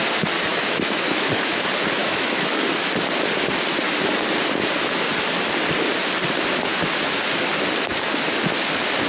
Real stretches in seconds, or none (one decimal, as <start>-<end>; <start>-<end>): 0.0-0.5; 1.5-2.0; 2.9-9.1